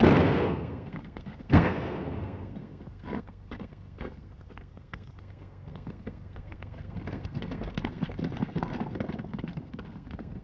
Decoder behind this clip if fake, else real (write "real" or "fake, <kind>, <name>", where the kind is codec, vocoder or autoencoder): fake, codec, SNAC